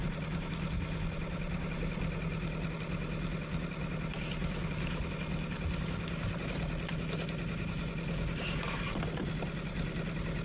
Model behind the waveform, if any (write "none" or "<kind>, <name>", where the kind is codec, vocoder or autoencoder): none